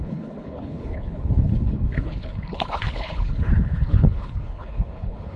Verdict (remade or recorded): remade